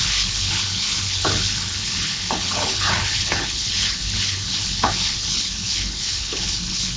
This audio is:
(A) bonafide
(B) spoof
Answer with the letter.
B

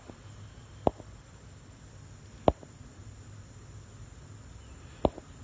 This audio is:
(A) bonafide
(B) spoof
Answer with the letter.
A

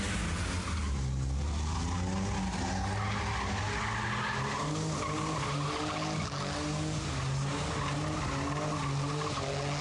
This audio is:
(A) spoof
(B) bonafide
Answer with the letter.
B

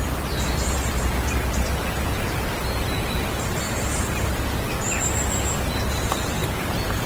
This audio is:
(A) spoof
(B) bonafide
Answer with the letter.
B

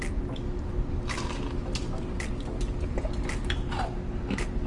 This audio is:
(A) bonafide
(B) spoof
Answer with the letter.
A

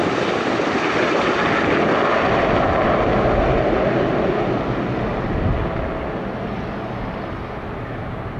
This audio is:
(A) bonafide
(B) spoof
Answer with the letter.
A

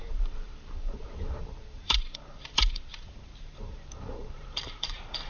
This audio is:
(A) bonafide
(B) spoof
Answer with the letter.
B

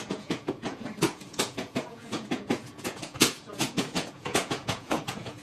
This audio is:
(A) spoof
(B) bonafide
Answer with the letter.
A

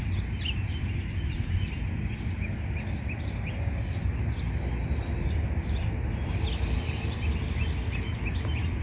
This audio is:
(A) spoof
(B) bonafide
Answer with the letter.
B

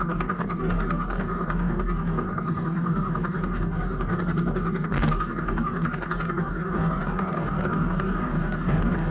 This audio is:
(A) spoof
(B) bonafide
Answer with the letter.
A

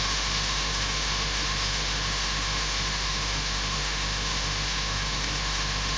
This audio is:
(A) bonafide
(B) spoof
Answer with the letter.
B